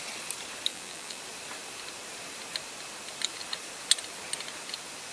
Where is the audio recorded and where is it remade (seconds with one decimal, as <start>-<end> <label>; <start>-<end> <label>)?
0.0-0.7 recorded; 0.7-1.2 remade; 1.2-5.1 recorded